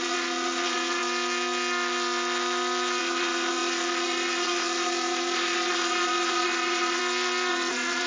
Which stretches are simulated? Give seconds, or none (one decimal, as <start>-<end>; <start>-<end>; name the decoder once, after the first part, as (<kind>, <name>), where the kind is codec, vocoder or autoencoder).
0.0-1.0 (vocoder, Vocos); 3.0-7.0; 7.5-8.1